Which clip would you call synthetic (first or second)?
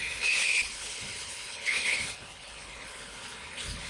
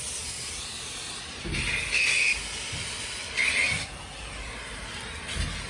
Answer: first